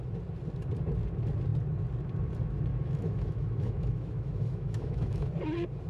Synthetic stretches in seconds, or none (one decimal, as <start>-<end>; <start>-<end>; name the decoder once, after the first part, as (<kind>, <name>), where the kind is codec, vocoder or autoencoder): 2.7-5.3 (autoencoder, DAC-VAE)